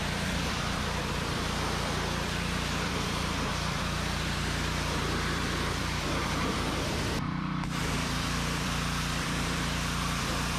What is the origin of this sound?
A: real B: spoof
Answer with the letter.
B